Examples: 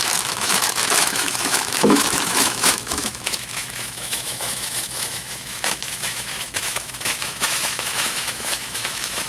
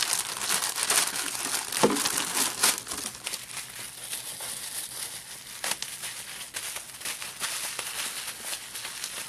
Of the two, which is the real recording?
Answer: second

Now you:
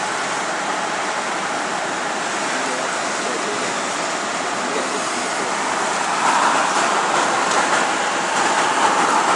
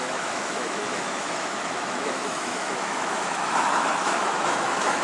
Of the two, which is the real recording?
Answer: first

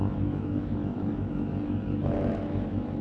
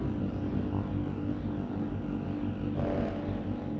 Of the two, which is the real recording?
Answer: second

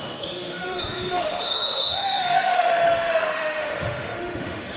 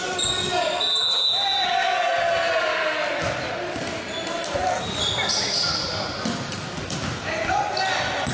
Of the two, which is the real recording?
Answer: second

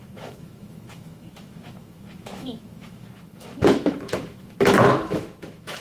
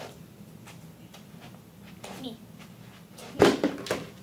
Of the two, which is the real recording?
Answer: second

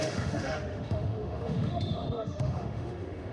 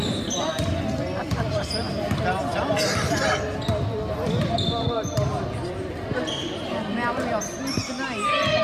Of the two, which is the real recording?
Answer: second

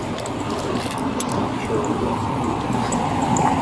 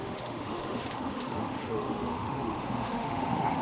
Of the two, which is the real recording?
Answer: first